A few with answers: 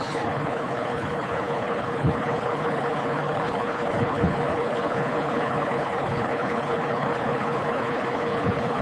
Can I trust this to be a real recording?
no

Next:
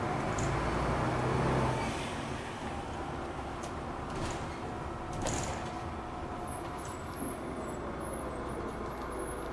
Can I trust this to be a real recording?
yes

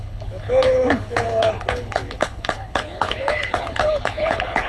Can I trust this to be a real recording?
no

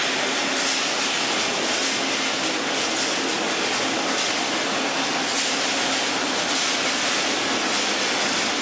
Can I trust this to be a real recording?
yes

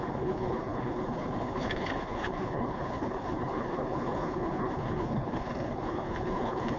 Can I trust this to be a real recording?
no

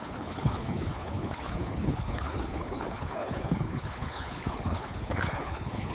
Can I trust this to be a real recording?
no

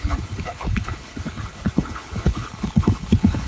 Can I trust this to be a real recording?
no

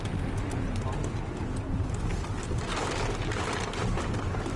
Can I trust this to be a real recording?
yes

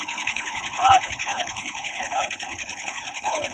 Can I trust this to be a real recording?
no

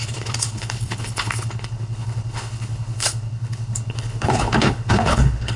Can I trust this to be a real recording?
no